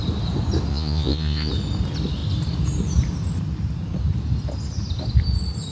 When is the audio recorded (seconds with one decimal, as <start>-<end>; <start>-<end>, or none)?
0.0-0.7; 1.5-5.7